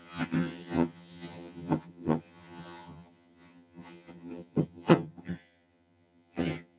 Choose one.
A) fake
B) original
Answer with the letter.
A